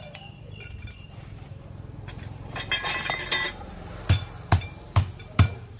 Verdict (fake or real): fake